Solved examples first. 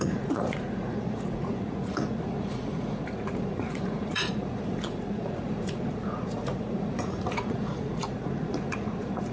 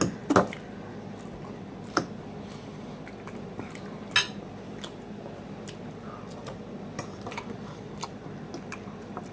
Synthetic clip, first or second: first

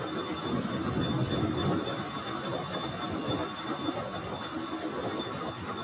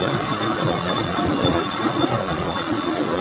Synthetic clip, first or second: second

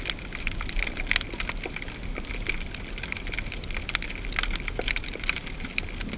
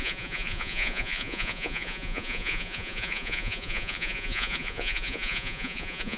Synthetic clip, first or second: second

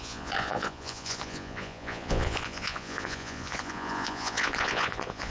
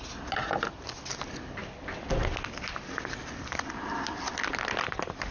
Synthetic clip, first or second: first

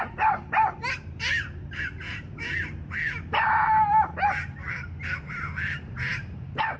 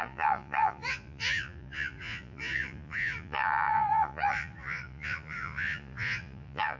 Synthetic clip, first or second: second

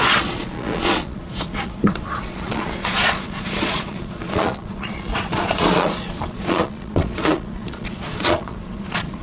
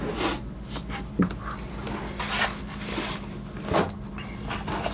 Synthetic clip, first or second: first